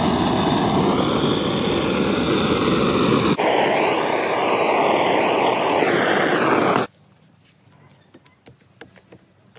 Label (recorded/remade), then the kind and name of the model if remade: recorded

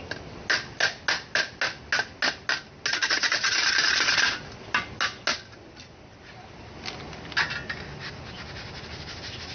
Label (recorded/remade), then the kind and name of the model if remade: recorded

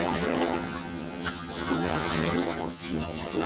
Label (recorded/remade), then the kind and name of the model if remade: remade, vocoder, HiFi-GAN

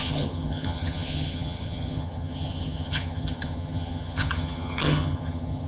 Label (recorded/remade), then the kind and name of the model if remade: remade, vocoder, HiFi-GAN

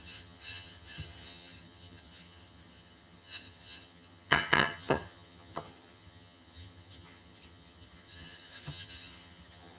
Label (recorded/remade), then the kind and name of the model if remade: remade, vocoder, HiFi-GAN